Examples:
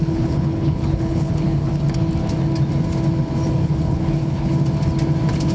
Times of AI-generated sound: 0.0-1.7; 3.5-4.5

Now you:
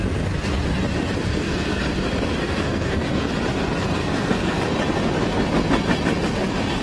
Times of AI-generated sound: 1.3-1.8; 2.4-3.2; 4.0-4.6